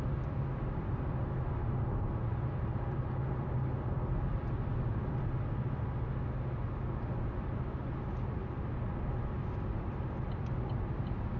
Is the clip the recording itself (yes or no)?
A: yes